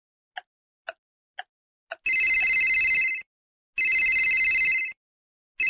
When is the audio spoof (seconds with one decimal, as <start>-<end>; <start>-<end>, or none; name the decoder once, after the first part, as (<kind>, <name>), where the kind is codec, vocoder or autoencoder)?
none